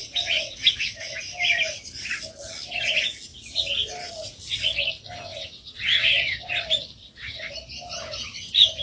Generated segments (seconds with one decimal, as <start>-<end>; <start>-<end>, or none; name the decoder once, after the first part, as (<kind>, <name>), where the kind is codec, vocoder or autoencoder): 0.0-1.2 (vocoder, WaveNeXt); 5.3-6.5; 7.0-7.5